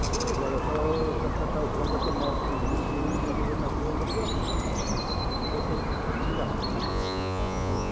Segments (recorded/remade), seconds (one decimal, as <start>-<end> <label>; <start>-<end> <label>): 0.0-6.9 recorded; 6.9-7.9 remade